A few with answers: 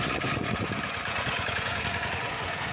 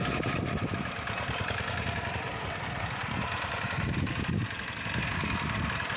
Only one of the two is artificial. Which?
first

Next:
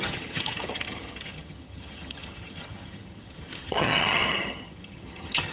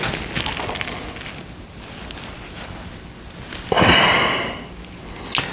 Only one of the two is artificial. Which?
first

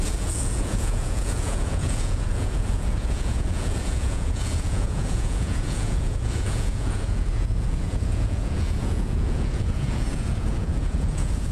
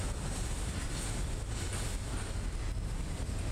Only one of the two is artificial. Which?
first